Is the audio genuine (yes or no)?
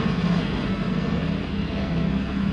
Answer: no